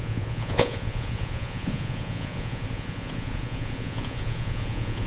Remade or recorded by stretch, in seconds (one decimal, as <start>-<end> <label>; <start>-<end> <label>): 0.0-5.1 remade